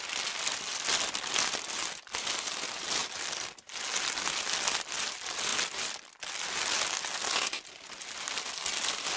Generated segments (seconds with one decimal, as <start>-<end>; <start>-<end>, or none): none